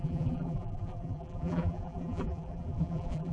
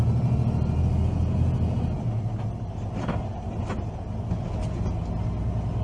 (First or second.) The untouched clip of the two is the second